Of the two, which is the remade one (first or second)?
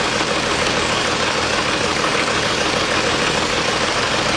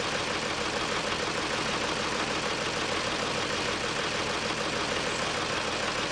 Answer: first